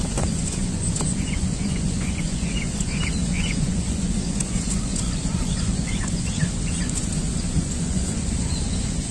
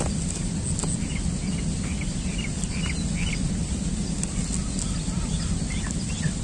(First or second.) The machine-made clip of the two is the first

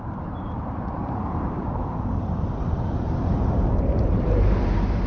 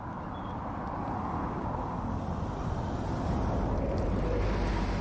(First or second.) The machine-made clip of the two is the first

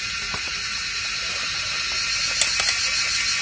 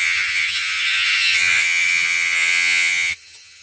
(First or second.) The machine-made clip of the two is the second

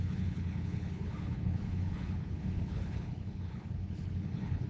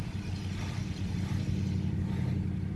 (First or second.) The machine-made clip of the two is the first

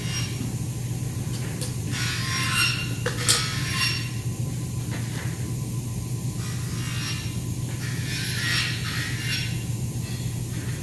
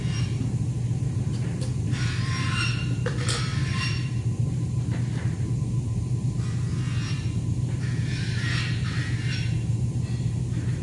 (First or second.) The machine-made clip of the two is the second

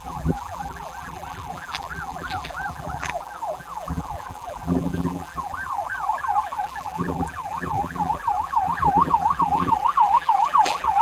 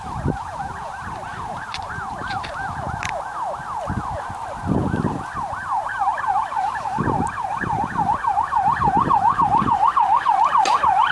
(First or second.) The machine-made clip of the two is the first